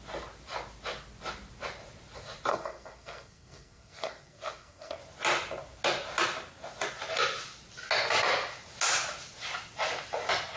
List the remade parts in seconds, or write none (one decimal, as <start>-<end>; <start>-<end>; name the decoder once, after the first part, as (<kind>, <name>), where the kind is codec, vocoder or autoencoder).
2.5-5.0 (codec, SNAC)